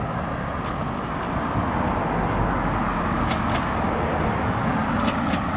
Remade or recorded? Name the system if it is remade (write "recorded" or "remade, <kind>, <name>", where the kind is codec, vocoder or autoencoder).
recorded